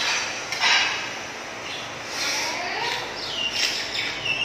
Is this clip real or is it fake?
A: real